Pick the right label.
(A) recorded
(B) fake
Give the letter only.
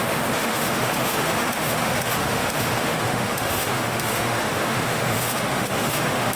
B